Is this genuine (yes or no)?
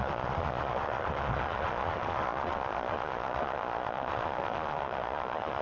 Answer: no